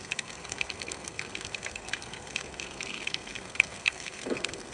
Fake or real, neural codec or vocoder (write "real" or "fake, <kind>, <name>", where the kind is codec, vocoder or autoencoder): fake, codec, SNAC